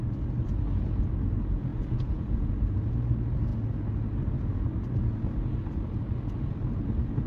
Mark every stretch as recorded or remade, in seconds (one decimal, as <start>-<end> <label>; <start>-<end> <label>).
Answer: 0.0-1.7 recorded; 1.7-2.5 remade; 2.5-7.3 recorded